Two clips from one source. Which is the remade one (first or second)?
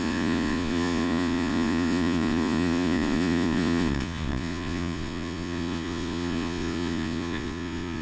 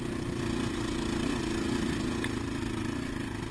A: first